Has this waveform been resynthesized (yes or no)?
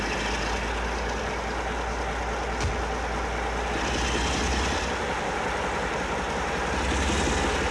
no